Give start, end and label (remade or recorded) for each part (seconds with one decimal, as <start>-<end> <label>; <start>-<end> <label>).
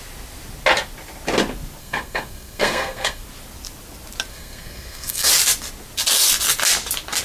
0.0-1.8 recorded; 1.8-3.2 remade; 3.2-4.3 recorded; 4.3-5.3 remade; 5.3-7.2 recorded